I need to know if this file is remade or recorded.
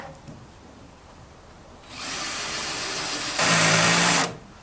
remade